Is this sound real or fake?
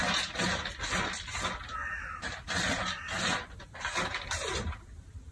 real